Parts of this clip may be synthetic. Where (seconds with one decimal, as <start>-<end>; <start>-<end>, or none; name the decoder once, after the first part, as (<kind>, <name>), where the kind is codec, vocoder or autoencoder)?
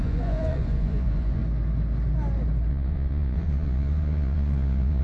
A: 0.0-1.4 (vocoder, Vocos); 2.7-5.0